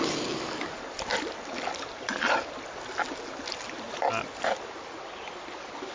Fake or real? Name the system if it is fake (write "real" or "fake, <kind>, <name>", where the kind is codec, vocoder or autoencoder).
real